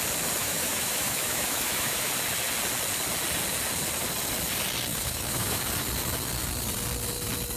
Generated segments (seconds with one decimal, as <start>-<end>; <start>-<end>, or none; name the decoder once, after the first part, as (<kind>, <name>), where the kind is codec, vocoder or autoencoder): 0.4-2.1 (autoencoder, DAC-VAE); 4.9-5.6